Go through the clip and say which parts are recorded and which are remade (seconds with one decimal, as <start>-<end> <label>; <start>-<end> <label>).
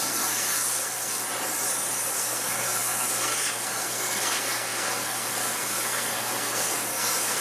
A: 0.0-1.2 remade; 1.2-2.1 recorded; 2.1-7.4 remade